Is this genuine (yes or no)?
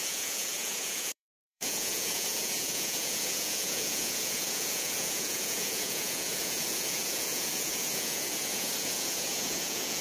no